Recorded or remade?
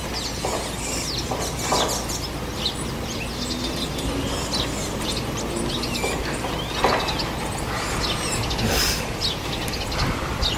recorded